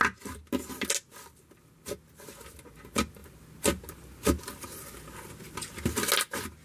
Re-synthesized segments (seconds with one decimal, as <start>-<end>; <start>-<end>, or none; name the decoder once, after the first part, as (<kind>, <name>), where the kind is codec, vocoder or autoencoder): none

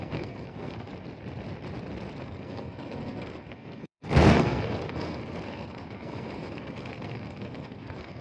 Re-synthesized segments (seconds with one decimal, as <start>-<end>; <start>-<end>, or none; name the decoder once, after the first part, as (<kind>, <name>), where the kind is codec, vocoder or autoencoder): 0.0-0.9 (codec, SNAC); 2.2-8.2

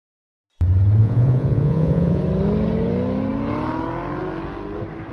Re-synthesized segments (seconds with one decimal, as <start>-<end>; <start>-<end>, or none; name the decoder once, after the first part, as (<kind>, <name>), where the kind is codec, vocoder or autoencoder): 1.0-2.2 (vocoder, Vocos)

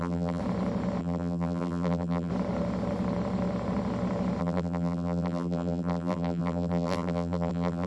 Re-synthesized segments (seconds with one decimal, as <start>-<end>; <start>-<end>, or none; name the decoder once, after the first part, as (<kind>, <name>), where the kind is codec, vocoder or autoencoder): 0.0-0.4 (vocoder, BigVGAN v2); 1.0-2.3; 4.4-7.9